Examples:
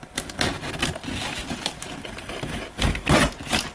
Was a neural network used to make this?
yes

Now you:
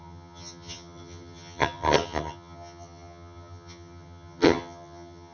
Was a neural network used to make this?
yes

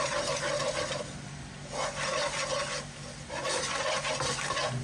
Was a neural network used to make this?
no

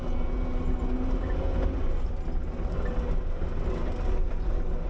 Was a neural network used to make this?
no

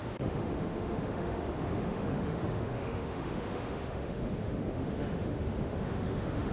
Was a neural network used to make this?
yes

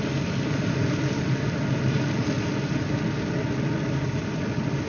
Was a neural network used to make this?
no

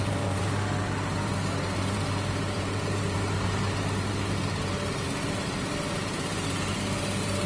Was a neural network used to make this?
yes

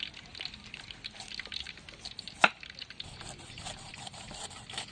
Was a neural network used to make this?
no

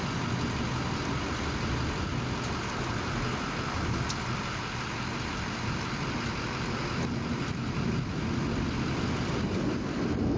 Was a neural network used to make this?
no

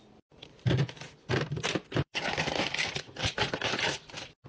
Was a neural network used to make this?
yes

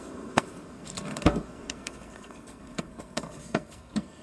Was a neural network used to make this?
yes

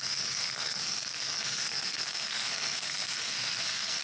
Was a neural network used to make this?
yes